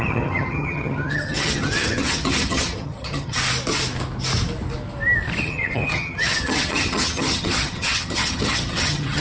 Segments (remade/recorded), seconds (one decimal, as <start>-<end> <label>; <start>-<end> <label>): 0.0-3.4 remade; 3.4-5.4 recorded; 5.4-9.2 remade